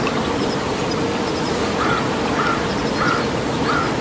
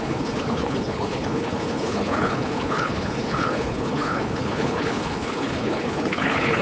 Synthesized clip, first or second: second